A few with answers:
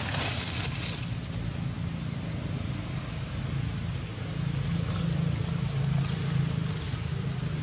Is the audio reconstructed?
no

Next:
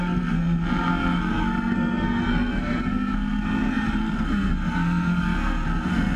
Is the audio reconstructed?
yes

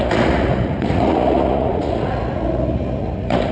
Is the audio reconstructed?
yes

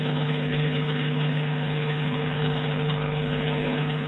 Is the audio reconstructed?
yes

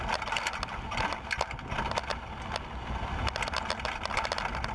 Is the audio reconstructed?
no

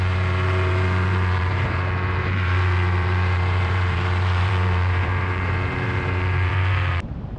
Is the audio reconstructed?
yes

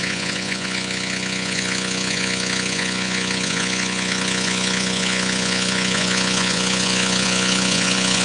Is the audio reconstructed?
yes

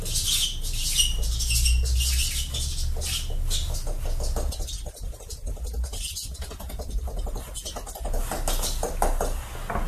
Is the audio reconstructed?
no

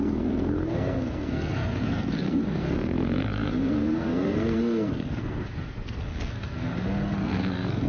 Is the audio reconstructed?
yes